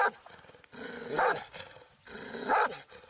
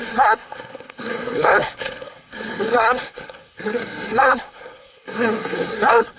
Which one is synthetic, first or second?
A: second